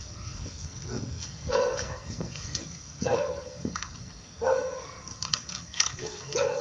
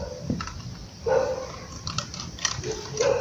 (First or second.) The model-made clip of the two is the first